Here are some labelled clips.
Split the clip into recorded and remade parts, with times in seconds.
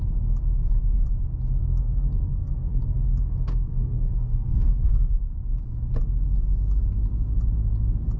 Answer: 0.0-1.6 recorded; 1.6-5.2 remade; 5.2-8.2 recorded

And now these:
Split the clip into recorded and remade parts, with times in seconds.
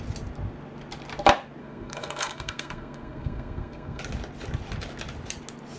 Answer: 0.0-1.6 recorded; 1.6-4.0 remade; 4.0-5.8 recorded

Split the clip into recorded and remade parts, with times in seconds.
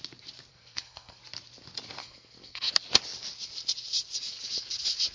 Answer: 0.0-0.5 recorded; 0.5-1.2 remade; 1.2-2.0 recorded; 2.0-2.7 remade; 2.7-5.1 recorded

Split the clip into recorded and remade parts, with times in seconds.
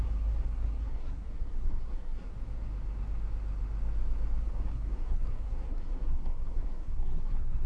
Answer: 0.0-2.3 remade; 2.3-4.4 recorded; 4.4-7.7 remade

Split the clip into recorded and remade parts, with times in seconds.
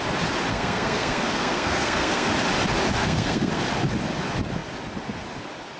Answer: 0.0-0.5 recorded; 0.5-2.3 remade; 2.3-3.0 recorded; 3.0-3.6 remade; 3.6-5.8 recorded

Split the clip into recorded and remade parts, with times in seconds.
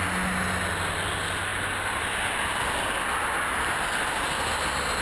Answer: 0.0-5.0 recorded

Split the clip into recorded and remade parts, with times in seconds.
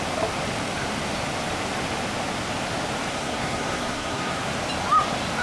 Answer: 0.0-3.1 recorded; 3.1-4.4 remade; 4.4-5.4 recorded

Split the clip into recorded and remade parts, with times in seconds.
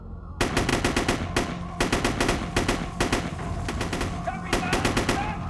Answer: 0.0-5.5 recorded